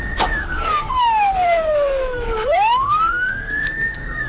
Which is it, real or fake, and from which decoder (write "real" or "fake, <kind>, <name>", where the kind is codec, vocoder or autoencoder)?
fake, codec, SNAC